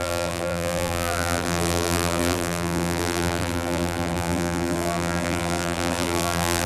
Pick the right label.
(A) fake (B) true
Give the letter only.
A